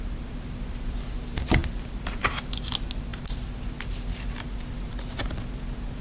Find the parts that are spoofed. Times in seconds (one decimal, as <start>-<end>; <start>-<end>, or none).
none